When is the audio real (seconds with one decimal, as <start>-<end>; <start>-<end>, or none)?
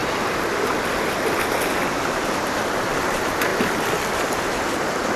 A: 0.0-3.5; 4.3-5.2